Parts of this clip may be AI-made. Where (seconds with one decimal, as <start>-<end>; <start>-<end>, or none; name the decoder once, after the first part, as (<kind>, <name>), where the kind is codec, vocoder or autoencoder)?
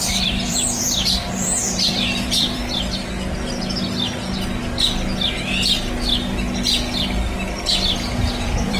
0.0-2.6 (vocoder, BigVGAN v2); 7.7-8.8